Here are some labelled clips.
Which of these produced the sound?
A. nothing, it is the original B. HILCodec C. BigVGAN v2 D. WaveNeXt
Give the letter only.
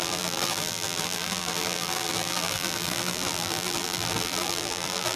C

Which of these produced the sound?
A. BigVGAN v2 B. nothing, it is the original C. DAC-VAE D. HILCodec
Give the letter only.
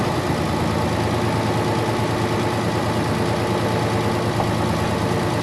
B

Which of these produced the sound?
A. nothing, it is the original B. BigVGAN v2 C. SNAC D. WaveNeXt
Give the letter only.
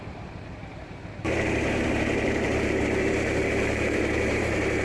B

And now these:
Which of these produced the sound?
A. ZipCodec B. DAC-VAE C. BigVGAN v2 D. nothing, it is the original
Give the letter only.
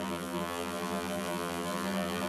C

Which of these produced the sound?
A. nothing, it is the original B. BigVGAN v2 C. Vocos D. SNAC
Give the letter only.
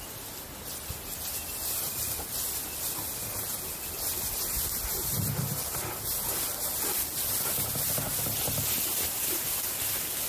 A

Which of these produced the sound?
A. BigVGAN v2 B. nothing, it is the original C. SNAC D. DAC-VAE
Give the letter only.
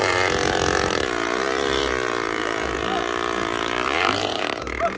A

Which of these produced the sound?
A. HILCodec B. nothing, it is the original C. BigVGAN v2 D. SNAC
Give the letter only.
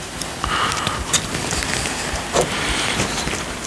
C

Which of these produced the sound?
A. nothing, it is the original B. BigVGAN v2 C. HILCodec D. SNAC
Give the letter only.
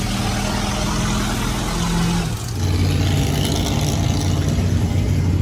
A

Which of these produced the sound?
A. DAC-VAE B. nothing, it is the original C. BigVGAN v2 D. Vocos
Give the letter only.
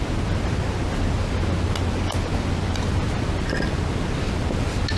B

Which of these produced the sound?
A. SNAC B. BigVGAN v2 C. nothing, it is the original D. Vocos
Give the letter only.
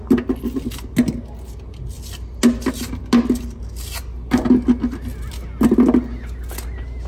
C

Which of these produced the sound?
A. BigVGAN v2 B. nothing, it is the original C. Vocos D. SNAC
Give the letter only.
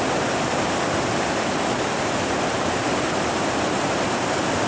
A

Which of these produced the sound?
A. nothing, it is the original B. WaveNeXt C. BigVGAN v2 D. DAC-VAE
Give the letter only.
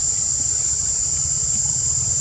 C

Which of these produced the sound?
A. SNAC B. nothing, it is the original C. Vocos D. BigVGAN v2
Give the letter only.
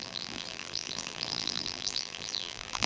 D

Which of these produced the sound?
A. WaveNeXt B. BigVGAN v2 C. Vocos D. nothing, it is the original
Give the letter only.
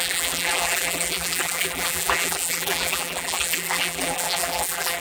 B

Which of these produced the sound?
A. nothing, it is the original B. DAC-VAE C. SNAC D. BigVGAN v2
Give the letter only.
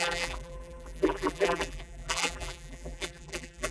D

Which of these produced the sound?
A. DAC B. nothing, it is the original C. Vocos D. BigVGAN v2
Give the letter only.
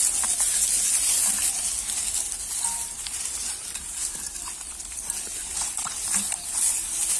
B